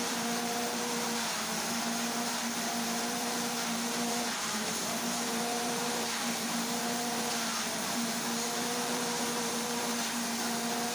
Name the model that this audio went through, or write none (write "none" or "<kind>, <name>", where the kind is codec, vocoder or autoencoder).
vocoder, BigVGAN v2